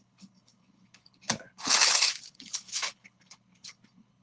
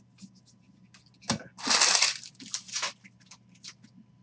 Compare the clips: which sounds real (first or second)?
second